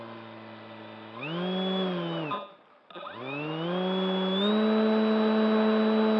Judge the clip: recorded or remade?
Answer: recorded